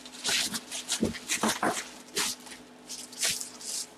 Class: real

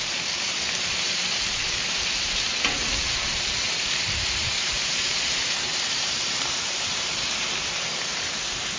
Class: fake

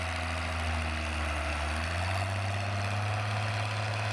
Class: real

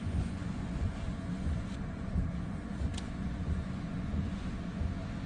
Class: fake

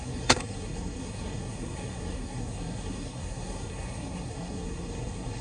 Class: fake